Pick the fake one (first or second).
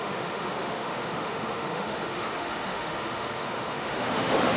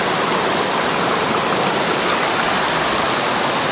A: first